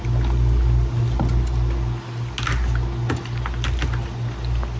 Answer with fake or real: real